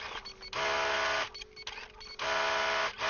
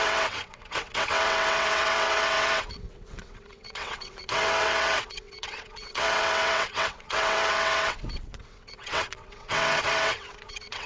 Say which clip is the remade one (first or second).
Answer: second